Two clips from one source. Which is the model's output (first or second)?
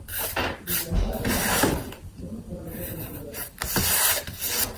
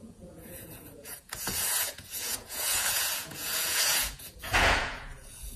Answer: second